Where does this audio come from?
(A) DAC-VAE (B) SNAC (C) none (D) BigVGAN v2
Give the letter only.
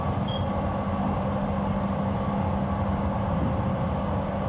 C